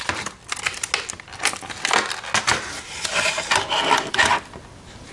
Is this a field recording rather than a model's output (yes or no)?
yes